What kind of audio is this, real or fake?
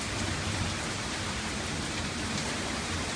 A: fake